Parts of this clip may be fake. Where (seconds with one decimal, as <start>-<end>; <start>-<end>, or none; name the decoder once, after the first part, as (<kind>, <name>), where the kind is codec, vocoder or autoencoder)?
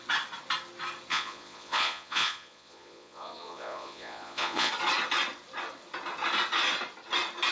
1.1-4.7 (vocoder, Vocos)